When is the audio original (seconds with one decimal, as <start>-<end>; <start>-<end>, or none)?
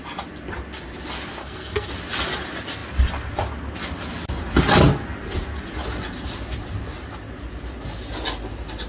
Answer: 0.0-1.4; 1.9-8.9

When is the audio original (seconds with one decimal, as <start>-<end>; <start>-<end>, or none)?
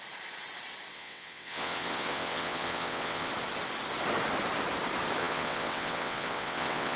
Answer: 0.0-0.9; 3.3-5.2